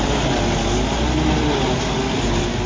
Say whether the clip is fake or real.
real